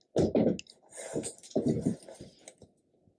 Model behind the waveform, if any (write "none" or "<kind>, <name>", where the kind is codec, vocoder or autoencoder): none